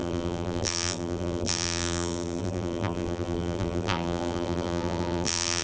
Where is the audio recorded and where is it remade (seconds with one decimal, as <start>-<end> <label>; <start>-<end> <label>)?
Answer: 0.0-5.6 remade

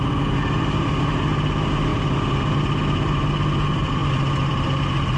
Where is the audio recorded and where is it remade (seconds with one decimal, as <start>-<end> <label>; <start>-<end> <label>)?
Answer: 0.0-5.2 recorded